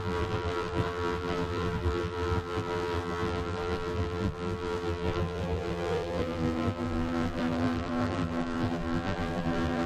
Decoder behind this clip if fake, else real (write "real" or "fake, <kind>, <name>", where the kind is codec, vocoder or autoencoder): fake, vocoder, BigVGAN v2